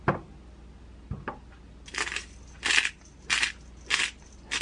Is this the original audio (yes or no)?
yes